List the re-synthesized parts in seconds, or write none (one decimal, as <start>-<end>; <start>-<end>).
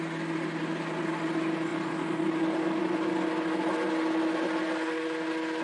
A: none